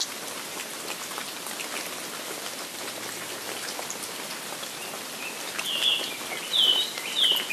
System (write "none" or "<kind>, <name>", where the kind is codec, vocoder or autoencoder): none